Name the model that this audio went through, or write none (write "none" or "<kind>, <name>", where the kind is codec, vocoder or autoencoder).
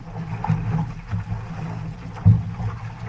none